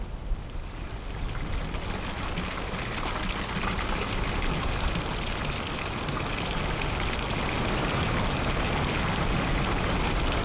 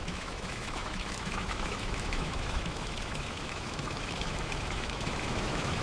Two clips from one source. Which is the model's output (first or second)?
second